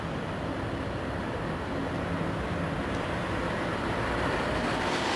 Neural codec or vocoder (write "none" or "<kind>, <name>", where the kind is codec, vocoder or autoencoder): vocoder, BigVGAN v2